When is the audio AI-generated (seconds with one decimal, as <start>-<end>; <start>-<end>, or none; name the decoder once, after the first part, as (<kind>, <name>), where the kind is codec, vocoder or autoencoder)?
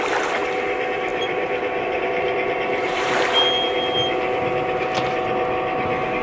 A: 1.1-2.0 (vocoder, BigVGAN v2)